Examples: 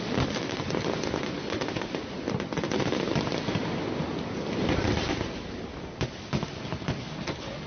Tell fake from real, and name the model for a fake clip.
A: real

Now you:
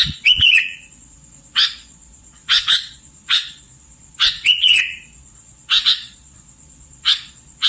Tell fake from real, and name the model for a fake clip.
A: fake, vocoder, Vocos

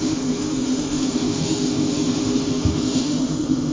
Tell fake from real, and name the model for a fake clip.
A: fake, autoencoder, DAC-VAE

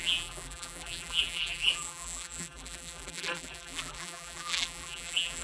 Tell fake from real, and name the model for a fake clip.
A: fake, vocoder, BigVGAN v2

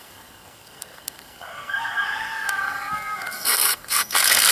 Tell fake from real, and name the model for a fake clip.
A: fake, codec, SNAC